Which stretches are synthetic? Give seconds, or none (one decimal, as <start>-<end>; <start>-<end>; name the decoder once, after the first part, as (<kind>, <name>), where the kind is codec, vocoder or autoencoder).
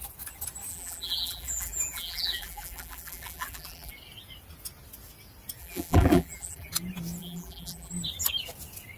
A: 0.7-3.9 (vocoder, BigVGAN v2); 5.6-6.7; 7.2-7.9